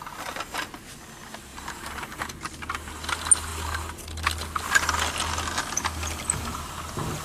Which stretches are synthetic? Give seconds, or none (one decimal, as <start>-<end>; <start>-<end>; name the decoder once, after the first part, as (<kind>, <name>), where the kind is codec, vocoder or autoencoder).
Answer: none